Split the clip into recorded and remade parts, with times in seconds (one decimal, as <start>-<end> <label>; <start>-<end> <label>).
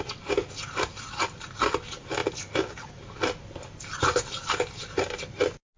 0.0-5.8 recorded